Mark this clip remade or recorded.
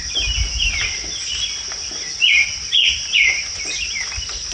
recorded